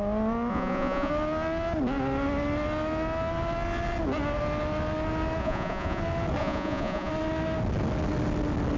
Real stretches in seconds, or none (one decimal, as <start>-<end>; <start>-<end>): 0.0-0.5; 1.1-5.4; 6.0-6.4; 7.1-8.8